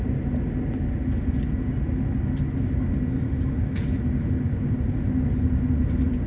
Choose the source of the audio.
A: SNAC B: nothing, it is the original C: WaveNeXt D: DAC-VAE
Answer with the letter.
B